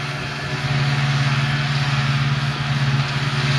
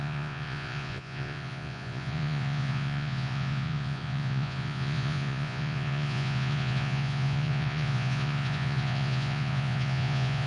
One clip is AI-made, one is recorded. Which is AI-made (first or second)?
second